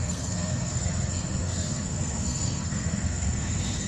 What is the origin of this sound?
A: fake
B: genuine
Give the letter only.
A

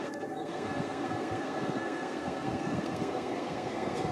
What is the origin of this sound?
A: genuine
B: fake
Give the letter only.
B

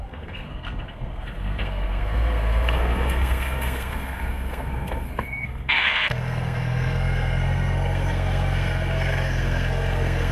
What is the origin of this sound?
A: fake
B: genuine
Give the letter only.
A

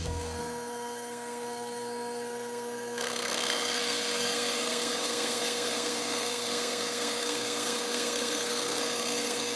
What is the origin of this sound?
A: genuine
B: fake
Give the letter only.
B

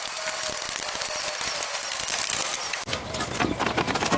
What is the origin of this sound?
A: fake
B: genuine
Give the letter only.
B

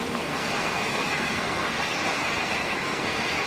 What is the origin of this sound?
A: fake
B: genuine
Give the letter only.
A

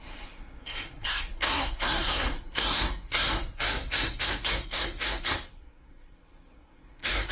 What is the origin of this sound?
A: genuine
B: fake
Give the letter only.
B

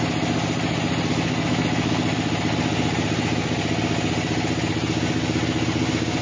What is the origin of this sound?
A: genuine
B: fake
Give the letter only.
A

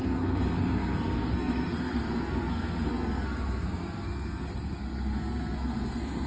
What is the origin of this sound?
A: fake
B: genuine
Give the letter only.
A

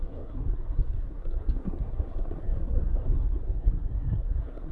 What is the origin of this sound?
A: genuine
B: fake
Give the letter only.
B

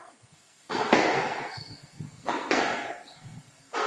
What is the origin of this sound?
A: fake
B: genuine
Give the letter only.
A